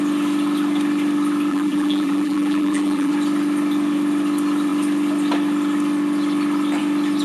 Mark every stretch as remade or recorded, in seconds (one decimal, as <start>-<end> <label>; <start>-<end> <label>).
0.0-1.5 recorded; 1.5-3.1 remade; 3.1-7.2 recorded